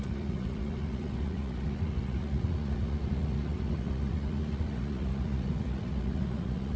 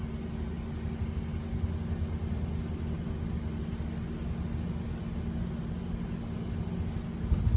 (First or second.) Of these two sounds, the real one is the second